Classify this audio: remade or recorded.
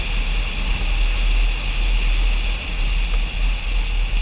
recorded